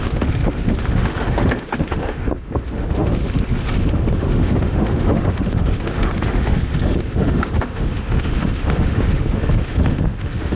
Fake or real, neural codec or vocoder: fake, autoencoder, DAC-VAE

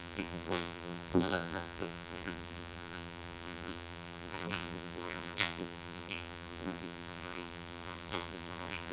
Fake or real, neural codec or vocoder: fake, vocoder, BigVGAN v2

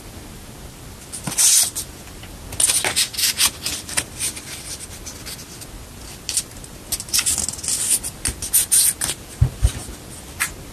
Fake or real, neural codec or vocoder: real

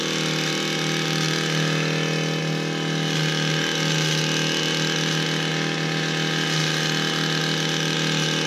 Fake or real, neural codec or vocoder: real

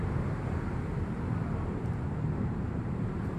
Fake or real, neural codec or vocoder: fake, vocoder, BigVGAN v2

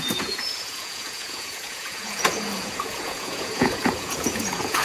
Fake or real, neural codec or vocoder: fake, vocoder, Vocos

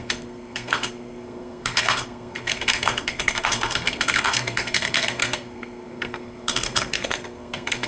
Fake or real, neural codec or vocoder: fake, codec, SNAC